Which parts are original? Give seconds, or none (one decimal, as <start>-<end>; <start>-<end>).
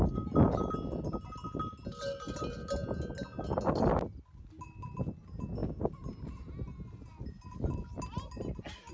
0.0-8.9